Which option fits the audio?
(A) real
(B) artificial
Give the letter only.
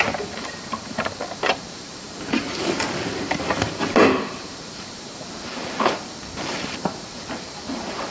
B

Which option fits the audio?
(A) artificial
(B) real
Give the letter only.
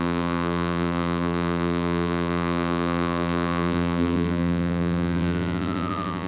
A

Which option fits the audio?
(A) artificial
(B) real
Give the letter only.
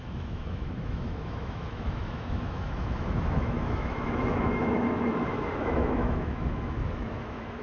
A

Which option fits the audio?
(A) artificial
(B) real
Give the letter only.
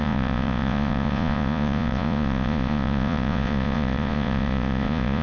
A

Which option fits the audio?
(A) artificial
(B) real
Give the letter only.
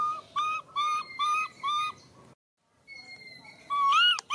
B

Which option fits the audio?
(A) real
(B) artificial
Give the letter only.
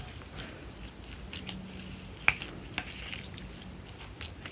A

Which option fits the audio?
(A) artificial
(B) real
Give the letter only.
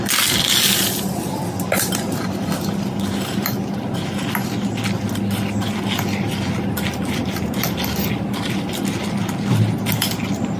B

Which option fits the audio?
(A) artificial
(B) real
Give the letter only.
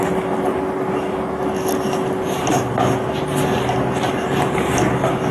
B